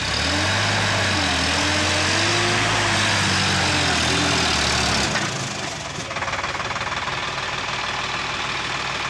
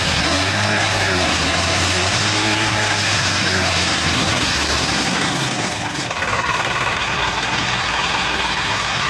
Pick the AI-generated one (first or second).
second